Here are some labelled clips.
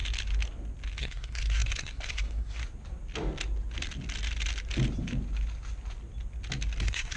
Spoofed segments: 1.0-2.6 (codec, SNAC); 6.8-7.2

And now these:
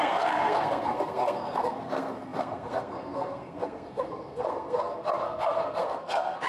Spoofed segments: 0.0-6.5 (codec, SNAC)

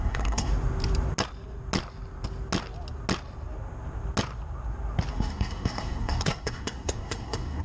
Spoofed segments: 0.0-0.5 (codec, SNAC); 5.1-7.6